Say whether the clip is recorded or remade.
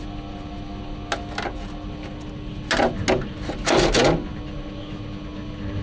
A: recorded